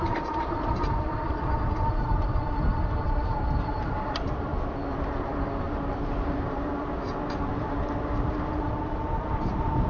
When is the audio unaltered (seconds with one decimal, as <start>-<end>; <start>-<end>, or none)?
4.5-5.6; 6.7-7.5